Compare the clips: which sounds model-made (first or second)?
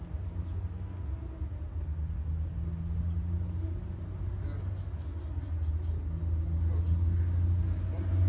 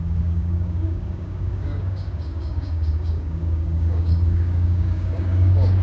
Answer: second